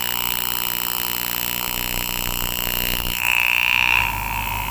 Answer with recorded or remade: recorded